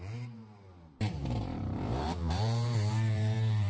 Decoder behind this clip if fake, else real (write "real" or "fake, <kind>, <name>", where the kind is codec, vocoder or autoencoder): fake, vocoder, BigVGAN v2